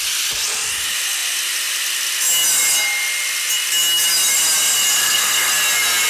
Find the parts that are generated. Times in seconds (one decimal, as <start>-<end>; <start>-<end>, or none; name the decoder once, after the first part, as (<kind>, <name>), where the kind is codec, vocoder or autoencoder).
5.0-5.5 (codec, SNAC)